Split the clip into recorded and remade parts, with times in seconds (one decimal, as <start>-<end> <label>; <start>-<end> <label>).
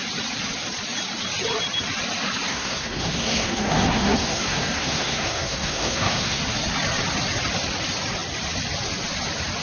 0.0-2.5 recorded; 2.5-6.4 remade; 6.4-9.6 recorded